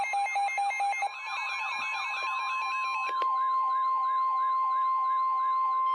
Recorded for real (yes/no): yes